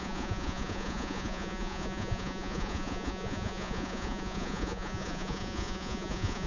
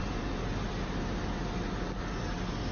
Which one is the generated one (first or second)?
first